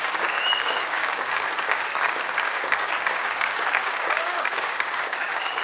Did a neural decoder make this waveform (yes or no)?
yes